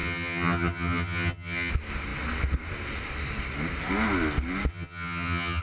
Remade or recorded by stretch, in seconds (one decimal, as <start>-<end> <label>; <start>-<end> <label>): 0.0-1.7 remade; 1.7-4.7 recorded; 4.7-5.6 remade